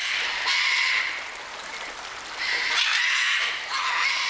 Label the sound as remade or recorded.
recorded